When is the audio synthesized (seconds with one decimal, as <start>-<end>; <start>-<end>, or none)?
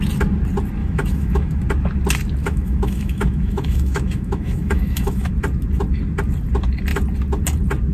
0.8-1.6; 2.4-5.3